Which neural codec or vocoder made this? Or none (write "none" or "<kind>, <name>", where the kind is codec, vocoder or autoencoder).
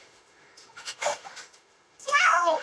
autoencoder, DAC-VAE